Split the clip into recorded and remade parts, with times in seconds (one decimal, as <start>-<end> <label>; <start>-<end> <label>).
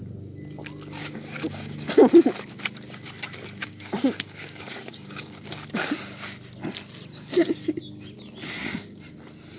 0.0-1.0 recorded; 1.0-1.9 remade; 1.9-3.6 recorded; 3.6-5.5 remade; 5.5-9.6 recorded